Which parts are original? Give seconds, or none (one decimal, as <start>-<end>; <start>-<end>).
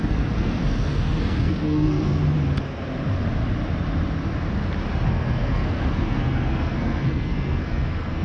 2.2-5.1